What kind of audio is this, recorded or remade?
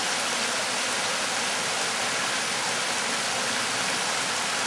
recorded